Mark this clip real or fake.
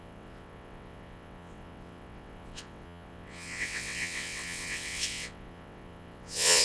fake